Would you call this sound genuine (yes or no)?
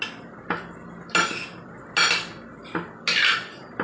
yes